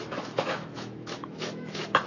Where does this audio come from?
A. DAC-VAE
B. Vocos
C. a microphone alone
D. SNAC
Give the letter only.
A